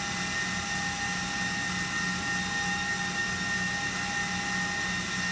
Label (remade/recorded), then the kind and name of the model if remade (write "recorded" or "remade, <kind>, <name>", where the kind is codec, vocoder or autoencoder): recorded